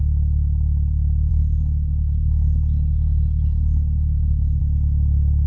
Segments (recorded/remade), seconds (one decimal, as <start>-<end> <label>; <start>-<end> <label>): 0.0-1.3 recorded; 1.3-4.6 remade; 4.6-5.5 recorded